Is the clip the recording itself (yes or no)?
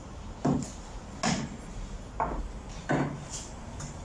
yes